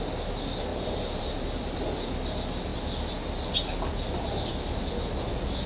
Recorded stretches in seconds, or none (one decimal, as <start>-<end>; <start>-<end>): 0.0-0.7; 1.8-5.7